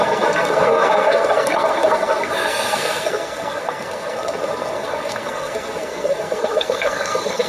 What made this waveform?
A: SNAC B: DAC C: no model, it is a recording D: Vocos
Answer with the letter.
A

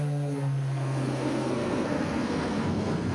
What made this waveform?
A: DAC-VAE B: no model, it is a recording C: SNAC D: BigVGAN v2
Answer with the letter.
C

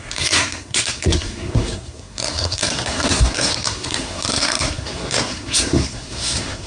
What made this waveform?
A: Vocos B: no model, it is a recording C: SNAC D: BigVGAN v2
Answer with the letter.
C